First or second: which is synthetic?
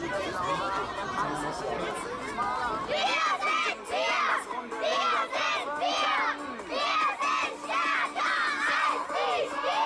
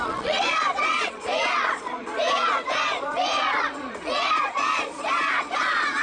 second